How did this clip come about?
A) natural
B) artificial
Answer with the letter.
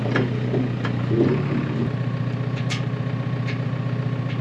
A